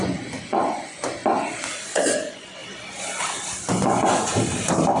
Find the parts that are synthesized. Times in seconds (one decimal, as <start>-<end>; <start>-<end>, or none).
0.0-1.2; 1.8-2.6; 3.7-4.3